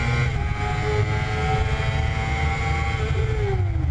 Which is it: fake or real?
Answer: real